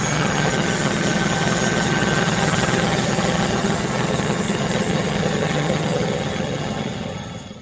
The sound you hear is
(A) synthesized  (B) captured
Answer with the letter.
A